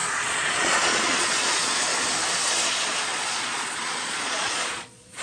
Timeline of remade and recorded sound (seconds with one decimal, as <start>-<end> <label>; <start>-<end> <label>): 0.0-1.9 remade; 1.9-2.4 recorded; 2.4-5.2 remade